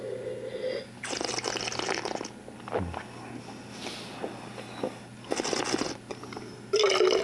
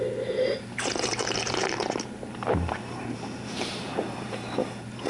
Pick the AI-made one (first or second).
second